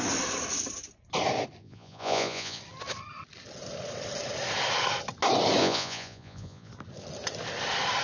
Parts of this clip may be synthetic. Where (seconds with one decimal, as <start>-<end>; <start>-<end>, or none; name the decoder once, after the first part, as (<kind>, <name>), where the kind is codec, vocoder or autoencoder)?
1.6-2.6 (vocoder, Vocos); 5.6-6.7